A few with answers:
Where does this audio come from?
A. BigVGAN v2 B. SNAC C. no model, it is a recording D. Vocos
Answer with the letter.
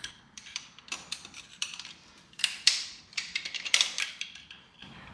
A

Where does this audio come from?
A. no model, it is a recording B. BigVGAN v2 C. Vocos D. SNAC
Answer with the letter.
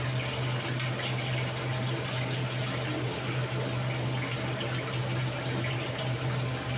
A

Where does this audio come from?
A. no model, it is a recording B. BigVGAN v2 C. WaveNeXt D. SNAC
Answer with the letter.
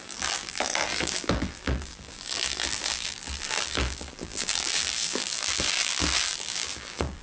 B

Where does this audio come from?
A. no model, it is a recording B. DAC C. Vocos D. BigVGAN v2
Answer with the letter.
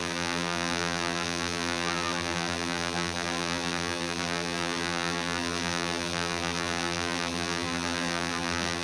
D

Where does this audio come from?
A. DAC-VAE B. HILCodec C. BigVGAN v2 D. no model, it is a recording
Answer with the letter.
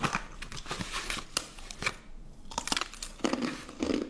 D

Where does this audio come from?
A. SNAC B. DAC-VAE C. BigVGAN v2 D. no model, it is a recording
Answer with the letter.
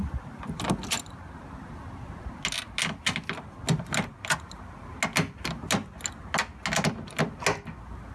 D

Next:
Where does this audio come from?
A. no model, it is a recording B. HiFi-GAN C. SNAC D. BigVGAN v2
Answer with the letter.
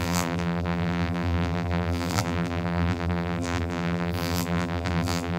D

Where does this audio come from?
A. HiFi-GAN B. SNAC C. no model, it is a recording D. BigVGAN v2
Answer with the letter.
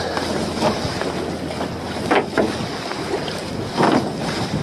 C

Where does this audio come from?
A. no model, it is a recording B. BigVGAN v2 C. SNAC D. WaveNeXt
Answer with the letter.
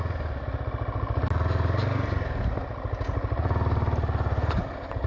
A